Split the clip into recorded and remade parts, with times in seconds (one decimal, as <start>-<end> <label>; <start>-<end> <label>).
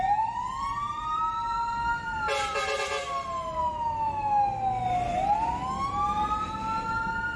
0.0-0.6 recorded; 0.6-1.2 remade; 1.2-7.4 recorded